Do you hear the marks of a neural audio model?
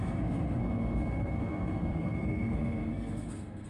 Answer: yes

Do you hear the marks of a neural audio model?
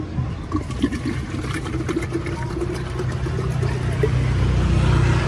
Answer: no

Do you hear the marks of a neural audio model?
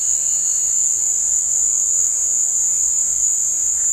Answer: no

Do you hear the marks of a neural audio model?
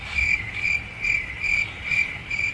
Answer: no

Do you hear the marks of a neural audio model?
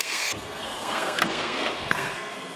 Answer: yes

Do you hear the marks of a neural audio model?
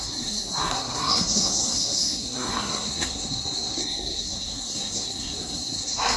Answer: yes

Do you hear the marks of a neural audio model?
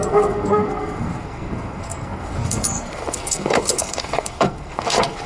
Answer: yes